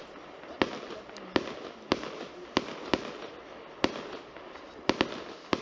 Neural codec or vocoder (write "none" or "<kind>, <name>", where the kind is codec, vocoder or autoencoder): none